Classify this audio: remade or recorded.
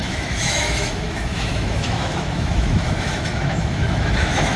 remade